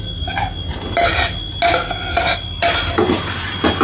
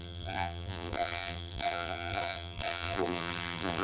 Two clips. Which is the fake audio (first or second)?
second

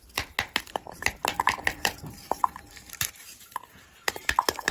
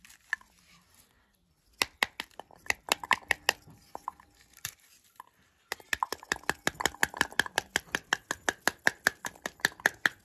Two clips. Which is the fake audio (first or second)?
first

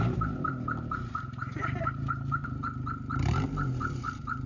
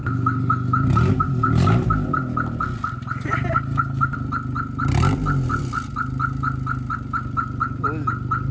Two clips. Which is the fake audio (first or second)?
first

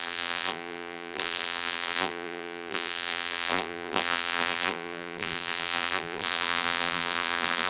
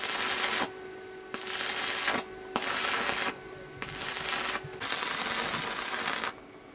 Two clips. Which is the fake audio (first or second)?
first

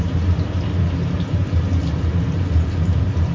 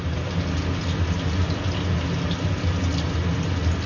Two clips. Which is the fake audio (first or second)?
first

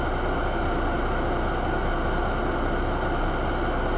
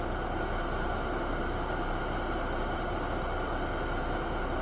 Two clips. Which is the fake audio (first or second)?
second